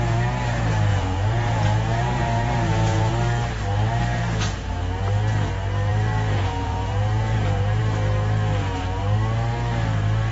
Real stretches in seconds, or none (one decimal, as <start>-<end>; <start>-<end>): 0.0-0.9; 3.1-5.9; 7.8-10.3